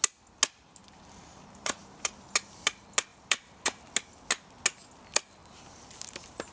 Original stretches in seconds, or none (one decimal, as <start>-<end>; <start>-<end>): 0.0-0.8; 2.1-3.1; 3.8-5.4